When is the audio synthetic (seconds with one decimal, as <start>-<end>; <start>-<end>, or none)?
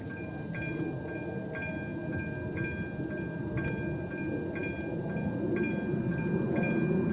none